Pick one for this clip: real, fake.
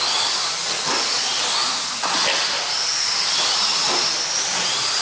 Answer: real